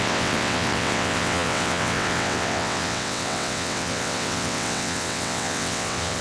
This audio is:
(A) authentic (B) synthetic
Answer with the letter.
B